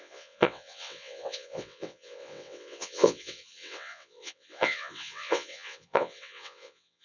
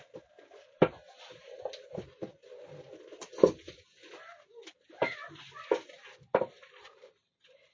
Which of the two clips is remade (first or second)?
first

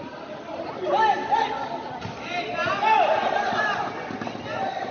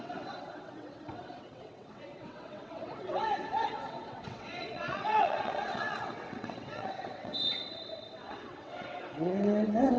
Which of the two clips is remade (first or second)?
second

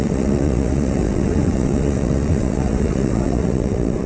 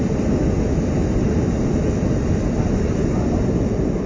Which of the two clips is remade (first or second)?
first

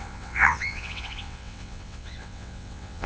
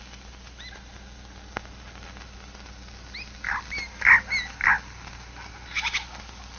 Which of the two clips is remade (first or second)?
first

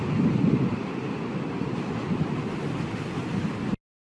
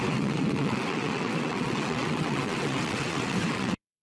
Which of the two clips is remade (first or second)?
second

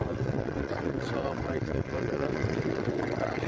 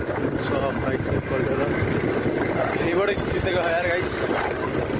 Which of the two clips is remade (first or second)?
first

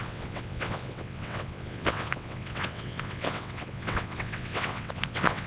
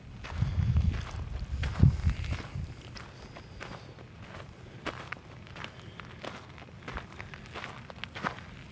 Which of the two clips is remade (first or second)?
first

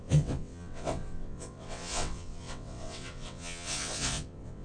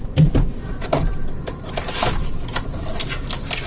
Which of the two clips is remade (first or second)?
first